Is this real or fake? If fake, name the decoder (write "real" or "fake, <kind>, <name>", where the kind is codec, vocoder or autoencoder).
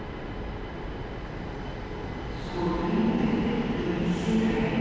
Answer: real